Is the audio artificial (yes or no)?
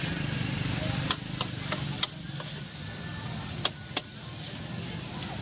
no